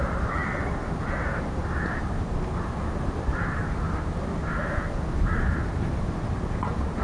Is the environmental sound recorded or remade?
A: remade